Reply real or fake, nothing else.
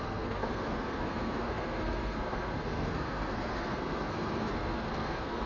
fake